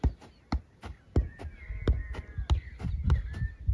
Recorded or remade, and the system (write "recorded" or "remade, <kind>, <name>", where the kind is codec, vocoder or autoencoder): recorded